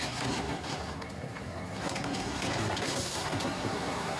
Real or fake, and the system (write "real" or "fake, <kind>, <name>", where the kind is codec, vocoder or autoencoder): fake, codec, SNAC